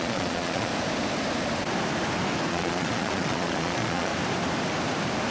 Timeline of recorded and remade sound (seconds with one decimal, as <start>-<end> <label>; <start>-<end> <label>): 0.0-0.7 remade; 0.7-2.5 recorded; 2.5-4.1 remade; 4.1-5.3 recorded